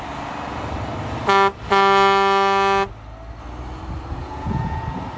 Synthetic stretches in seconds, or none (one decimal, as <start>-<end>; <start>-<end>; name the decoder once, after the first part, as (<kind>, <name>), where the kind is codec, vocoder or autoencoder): 4.2-4.8 (vocoder, Vocos)